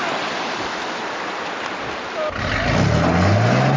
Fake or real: real